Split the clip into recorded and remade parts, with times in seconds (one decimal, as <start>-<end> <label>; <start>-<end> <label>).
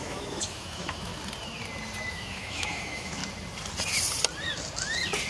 0.0-1.1 remade; 1.1-2.1 recorded; 2.1-3.2 remade; 3.2-5.3 recorded